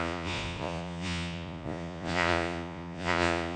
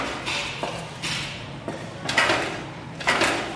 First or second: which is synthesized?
first